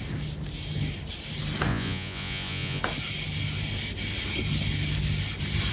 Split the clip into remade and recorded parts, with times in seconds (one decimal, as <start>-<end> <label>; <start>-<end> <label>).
0.0-1.7 recorded; 1.7-2.8 remade; 2.8-5.7 recorded

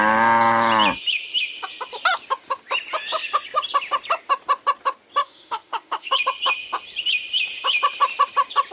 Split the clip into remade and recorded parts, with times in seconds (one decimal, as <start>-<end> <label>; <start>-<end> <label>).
0.0-5.2 recorded; 5.2-6.1 remade; 6.1-8.7 recorded